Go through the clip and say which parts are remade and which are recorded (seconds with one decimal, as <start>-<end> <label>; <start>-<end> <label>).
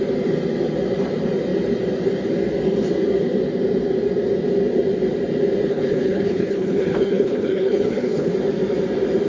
0.0-5.7 recorded; 5.7-8.3 remade; 8.3-9.3 recorded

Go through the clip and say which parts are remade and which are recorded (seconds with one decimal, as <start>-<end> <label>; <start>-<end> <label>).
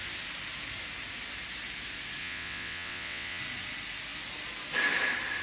0.0-2.2 recorded; 2.2-3.4 remade; 3.4-5.4 recorded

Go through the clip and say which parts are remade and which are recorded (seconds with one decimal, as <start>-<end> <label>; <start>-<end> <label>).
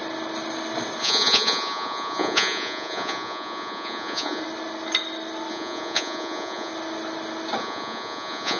0.0-1.0 recorded; 1.0-4.4 remade; 4.4-5.5 recorded; 5.5-6.7 remade; 6.7-7.6 recorded; 7.6-8.6 remade